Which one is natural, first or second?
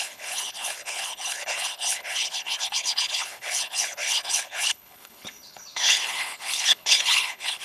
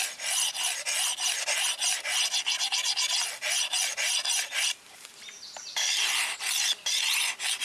second